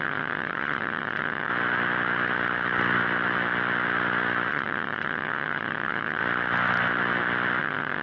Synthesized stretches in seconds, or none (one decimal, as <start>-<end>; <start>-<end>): 0.0-1.5; 4.5-6.2; 7.6-8.0